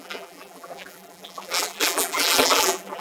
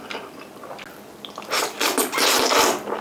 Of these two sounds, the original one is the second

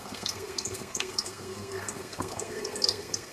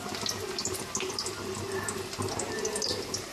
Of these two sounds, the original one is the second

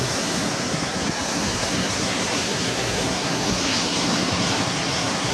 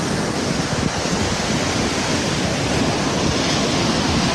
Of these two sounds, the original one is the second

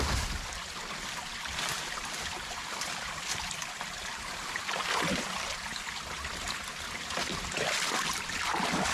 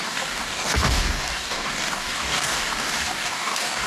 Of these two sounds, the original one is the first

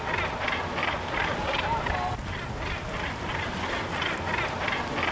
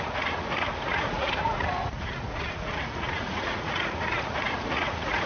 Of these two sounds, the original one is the first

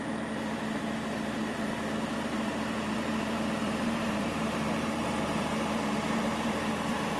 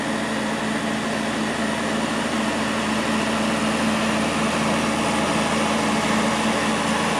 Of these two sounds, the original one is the second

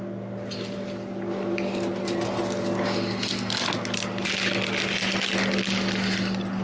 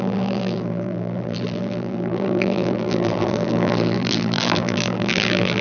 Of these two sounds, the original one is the first